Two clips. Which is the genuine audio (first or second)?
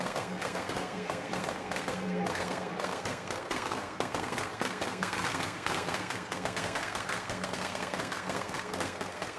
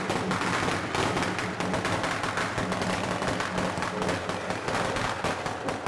second